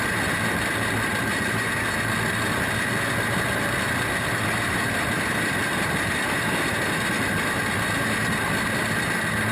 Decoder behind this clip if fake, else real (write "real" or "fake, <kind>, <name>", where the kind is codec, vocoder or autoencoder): real